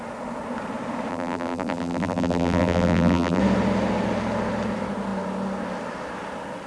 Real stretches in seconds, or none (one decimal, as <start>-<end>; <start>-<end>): 0.0-1.1; 3.4-6.7